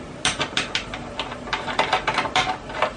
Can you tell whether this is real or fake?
real